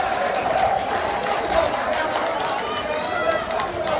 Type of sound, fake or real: real